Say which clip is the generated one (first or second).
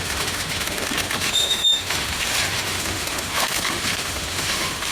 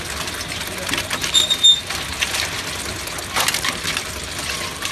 first